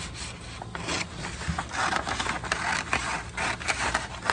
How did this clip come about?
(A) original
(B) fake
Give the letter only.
A